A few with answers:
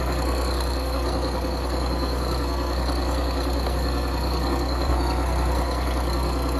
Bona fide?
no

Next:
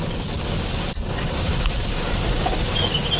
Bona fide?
yes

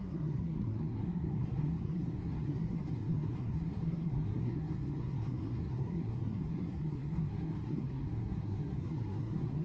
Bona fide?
no